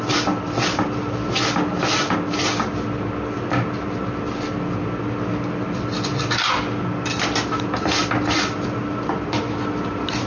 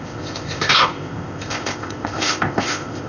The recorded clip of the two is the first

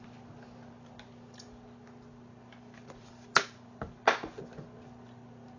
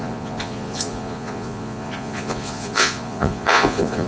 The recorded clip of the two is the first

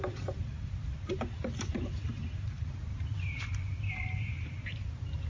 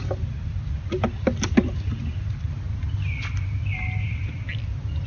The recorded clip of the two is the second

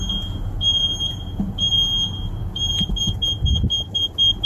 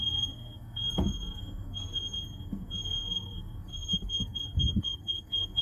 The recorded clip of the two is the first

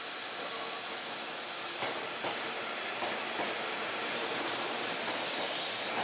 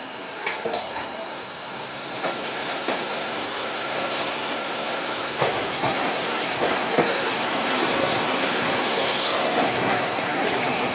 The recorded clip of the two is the first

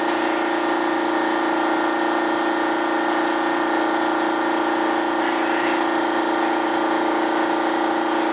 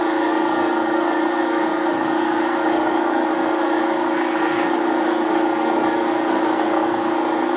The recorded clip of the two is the first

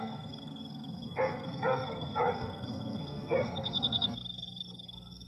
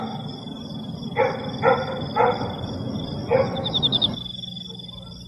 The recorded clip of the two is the second